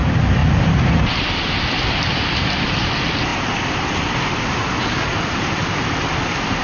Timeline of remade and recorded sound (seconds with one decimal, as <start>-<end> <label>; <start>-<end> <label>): 0.0-0.4 recorded; 0.4-2.9 remade; 2.9-4.8 recorded; 4.8-6.6 remade